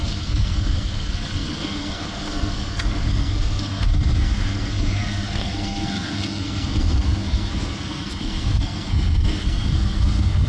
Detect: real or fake fake